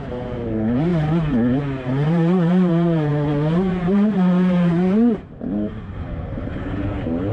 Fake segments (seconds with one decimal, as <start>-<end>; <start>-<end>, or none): 0.0-0.9; 1.6-7.3